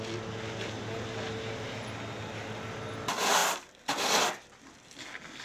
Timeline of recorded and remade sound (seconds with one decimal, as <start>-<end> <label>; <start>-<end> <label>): 0.0-5.4 recorded